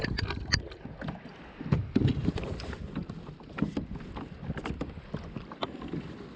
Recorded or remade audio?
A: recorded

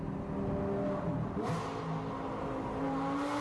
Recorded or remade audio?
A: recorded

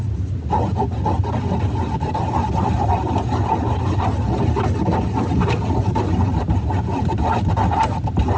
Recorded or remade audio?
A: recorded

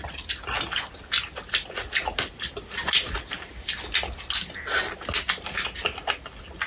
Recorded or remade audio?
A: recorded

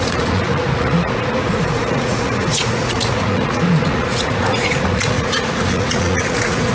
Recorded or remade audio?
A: remade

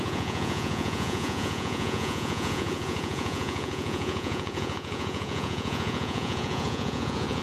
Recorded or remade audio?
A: remade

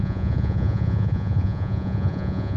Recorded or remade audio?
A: remade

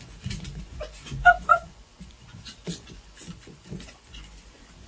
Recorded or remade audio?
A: remade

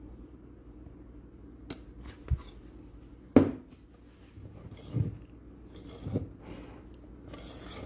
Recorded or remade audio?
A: recorded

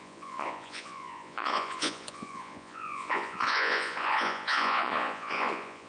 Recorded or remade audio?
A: remade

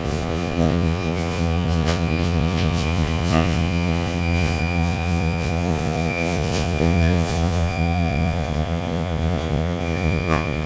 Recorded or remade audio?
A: remade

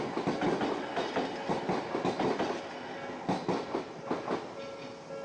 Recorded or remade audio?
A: recorded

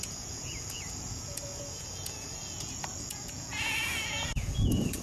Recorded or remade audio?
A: remade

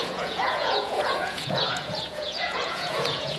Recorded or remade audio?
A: remade